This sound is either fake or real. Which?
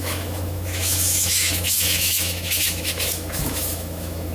fake